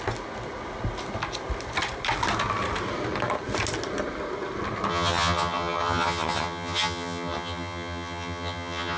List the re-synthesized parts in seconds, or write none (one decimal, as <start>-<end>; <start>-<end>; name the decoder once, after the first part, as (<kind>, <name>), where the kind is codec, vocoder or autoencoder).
4.9-9.0 (vocoder, HiFi-GAN)